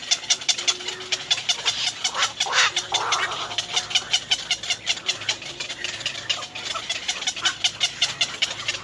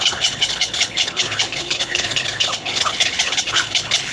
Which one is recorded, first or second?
first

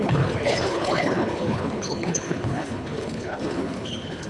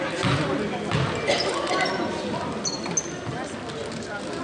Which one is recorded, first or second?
second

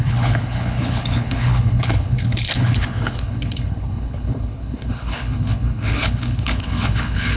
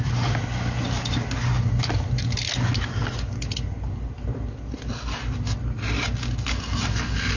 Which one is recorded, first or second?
second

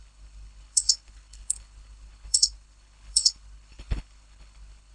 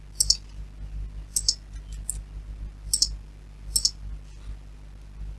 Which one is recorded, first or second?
second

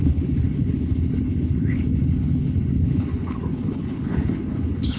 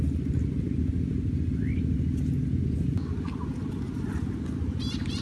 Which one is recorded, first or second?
second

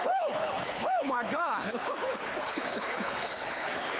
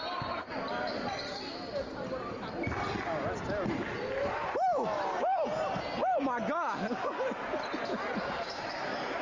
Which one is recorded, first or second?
second